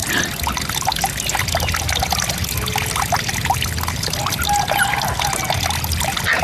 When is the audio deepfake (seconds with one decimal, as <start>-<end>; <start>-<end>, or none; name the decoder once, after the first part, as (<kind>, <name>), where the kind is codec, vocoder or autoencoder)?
none